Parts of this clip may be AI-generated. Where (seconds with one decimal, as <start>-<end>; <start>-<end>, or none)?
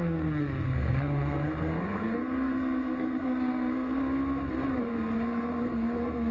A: 0.0-4.0; 4.8-6.3